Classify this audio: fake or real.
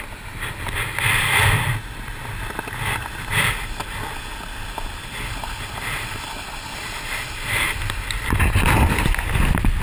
real